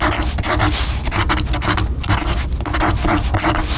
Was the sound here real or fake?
real